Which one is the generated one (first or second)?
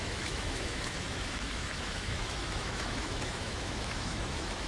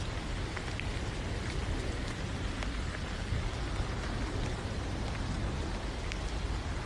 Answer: first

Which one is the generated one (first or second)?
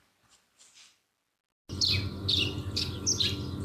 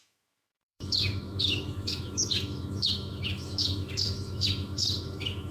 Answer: second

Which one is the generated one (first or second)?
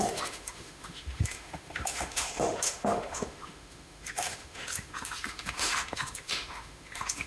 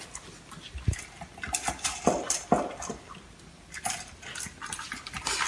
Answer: first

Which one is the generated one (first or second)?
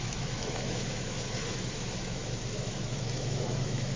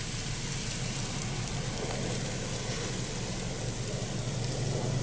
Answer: first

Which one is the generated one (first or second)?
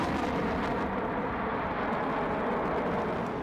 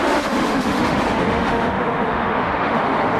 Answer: second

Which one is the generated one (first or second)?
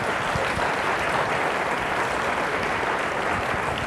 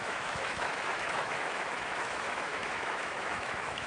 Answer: second